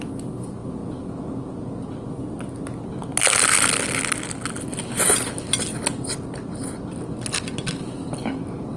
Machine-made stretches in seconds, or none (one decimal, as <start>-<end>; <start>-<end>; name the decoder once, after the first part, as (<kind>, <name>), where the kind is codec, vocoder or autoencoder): none